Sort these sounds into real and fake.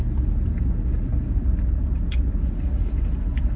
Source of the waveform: real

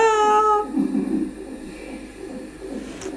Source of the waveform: real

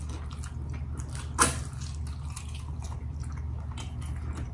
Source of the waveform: real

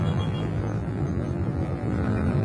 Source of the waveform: fake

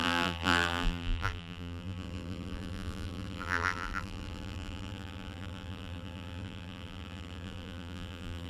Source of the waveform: fake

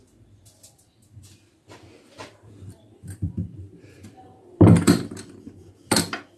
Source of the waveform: fake